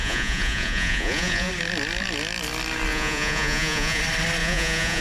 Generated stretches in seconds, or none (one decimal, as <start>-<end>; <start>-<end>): 0.0-1.5; 2.9-4.0; 4.4-5.0